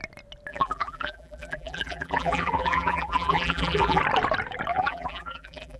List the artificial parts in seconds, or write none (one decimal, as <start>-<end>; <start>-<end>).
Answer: 0.5-4.0; 4.7-5.8